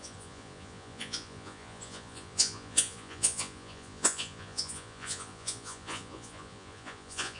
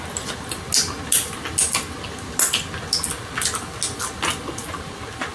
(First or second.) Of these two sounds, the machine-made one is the first